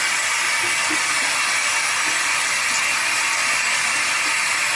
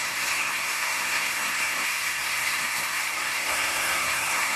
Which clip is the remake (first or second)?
second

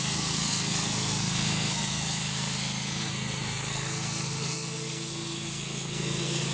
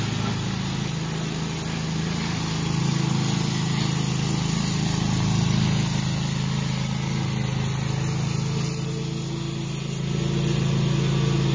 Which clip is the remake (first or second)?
first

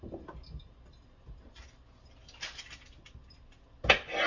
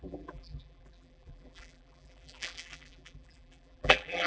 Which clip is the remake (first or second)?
second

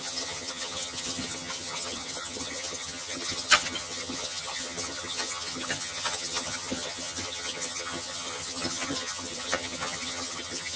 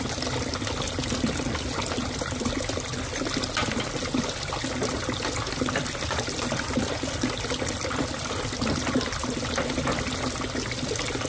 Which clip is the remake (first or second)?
first